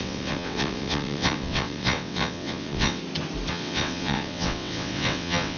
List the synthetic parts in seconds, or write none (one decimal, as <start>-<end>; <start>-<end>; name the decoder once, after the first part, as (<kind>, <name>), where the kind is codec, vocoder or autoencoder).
0.0-3.0 (vocoder, WaveNeXt); 3.5-5.6